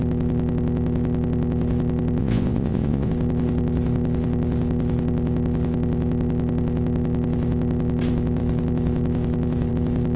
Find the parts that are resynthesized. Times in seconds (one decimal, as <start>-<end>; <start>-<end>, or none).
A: 2.2-3.1